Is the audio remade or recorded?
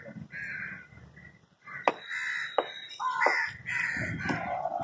recorded